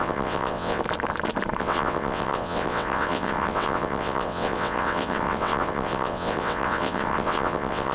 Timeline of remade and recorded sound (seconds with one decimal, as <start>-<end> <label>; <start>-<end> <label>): 0.0-0.8 remade; 0.8-1.6 recorded; 1.6-7.9 remade